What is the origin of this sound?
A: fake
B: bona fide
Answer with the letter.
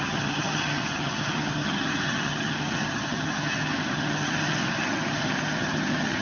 A